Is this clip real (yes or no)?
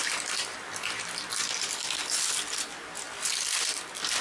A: no